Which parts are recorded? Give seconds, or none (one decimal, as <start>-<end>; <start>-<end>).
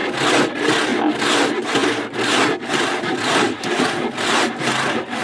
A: 0.0-5.2